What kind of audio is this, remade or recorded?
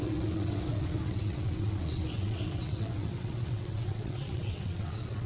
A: remade